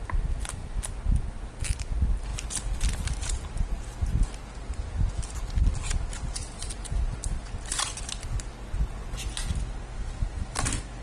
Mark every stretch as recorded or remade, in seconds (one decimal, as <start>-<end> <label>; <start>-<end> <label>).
0.0-11.0 recorded